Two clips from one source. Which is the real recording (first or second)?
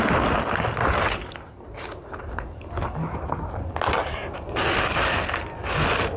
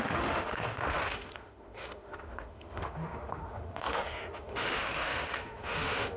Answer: first